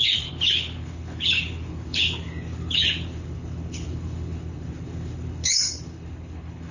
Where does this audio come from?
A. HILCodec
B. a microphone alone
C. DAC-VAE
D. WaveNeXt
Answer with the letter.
A